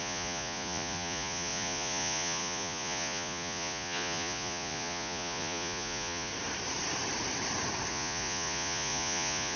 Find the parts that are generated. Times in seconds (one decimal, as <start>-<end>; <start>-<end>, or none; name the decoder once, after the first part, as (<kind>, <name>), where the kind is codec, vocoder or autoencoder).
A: 0.0-6.3 (vocoder, Vocos); 7.9-9.6

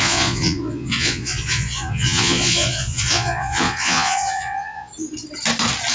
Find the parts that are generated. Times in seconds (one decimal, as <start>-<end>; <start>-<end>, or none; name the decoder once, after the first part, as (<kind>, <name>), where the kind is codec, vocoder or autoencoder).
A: 0.0-4.9 (vocoder, Vocos)